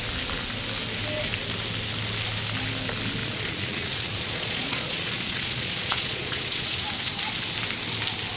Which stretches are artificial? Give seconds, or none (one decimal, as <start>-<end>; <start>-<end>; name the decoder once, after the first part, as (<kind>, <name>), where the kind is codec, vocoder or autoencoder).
3.2-7.1 (vocoder, Vocos)